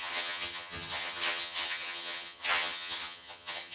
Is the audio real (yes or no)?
no